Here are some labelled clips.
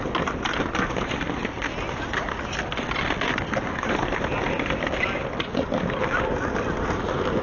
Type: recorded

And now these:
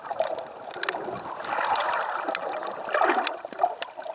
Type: recorded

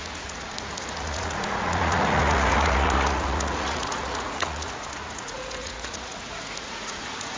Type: remade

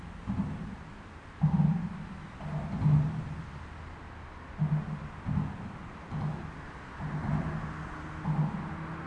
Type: recorded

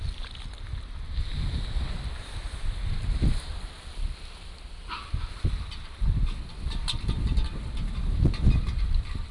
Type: recorded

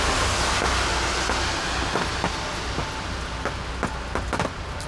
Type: recorded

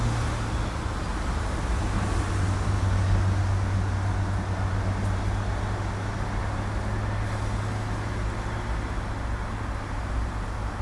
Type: recorded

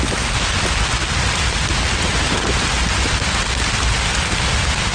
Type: recorded